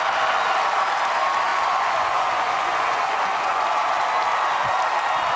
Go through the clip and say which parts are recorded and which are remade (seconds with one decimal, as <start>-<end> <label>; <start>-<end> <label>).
0.0-1.5 recorded; 1.5-3.8 remade; 3.8-5.4 recorded